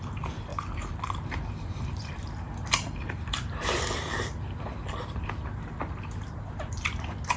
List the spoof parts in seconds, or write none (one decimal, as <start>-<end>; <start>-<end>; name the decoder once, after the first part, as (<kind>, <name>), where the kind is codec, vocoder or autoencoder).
0.5-4.9 (vocoder, BigVGAN v2)